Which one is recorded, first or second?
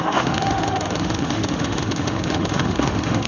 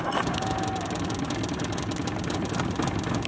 second